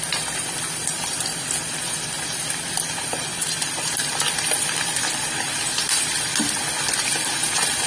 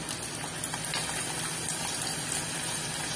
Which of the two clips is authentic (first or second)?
second